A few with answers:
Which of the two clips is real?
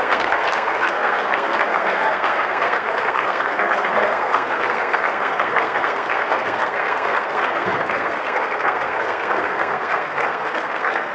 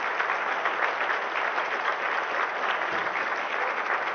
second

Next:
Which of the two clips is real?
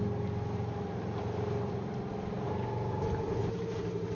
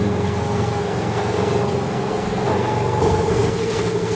first